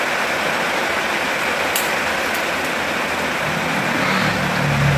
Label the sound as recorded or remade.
recorded